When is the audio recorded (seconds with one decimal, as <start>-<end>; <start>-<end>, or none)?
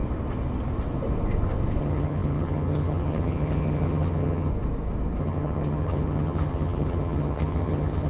0.0-1.8; 4.5-5.2